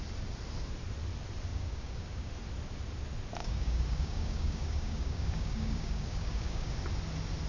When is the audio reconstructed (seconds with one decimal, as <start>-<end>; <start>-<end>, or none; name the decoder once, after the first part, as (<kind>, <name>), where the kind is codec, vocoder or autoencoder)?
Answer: 1.5-2.3 (codec, DAC); 3.4-6.7